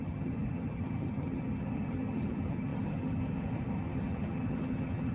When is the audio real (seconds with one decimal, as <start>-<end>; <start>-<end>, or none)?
none